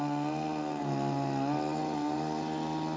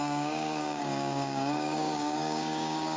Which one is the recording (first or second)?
first